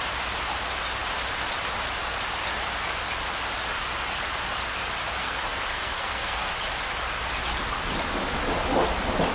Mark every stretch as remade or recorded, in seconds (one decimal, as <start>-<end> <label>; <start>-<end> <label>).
0.0-5.2 recorded; 5.2-6.5 remade; 6.5-9.3 recorded